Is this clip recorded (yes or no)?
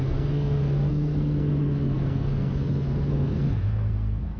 no